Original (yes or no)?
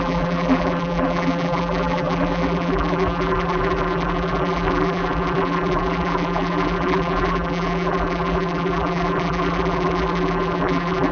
no